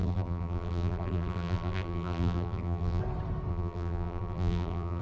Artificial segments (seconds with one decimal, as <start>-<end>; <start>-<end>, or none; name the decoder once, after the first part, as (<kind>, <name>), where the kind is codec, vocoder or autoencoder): 0.0-3.0 (vocoder, BigVGAN v2); 3.5-5.0